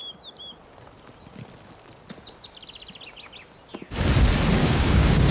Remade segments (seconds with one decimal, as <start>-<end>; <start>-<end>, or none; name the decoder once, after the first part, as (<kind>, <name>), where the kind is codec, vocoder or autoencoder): 4.6-5.3 (codec, DAC)